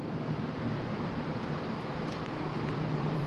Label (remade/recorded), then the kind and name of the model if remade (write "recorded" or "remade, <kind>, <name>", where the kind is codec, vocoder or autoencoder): remade, vocoder, BigVGAN v2